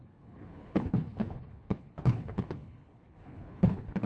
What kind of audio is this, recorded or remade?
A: remade